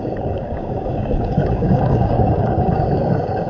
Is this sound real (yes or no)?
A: no